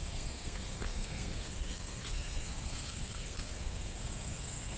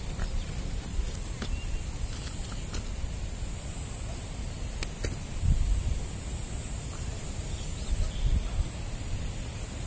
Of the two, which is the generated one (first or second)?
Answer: first